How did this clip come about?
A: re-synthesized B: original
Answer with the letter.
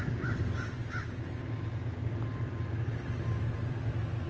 B